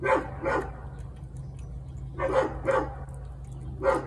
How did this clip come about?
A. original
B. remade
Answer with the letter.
A